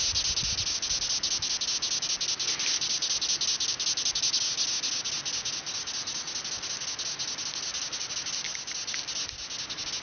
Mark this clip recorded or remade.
recorded